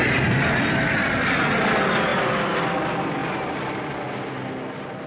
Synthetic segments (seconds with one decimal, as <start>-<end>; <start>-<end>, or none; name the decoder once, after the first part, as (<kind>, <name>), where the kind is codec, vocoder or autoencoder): none